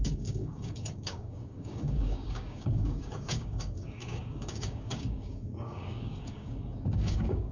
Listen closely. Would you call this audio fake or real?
fake